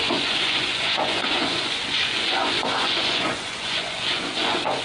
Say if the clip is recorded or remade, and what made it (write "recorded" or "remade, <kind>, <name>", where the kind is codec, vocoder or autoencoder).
remade, vocoder, Vocos